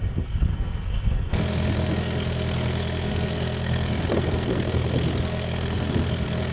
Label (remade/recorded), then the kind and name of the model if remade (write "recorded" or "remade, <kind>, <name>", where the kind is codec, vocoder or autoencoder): remade, codec, SNAC